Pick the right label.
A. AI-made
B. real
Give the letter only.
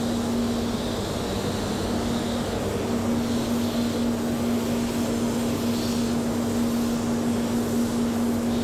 B